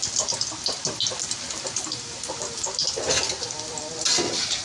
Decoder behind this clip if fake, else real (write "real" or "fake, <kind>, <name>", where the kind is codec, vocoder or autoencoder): real